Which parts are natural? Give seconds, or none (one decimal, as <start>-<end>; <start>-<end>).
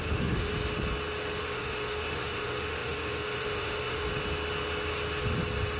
0.5-1.4; 4.1-5.8